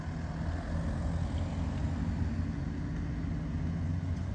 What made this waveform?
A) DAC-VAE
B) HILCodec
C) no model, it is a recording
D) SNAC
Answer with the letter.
C